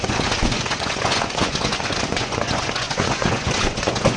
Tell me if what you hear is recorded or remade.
remade